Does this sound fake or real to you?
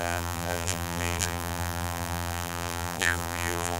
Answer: fake